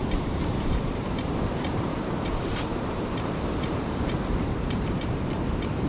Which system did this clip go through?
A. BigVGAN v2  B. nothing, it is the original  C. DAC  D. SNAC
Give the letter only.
A